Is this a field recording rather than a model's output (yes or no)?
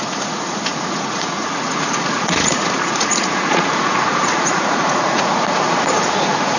no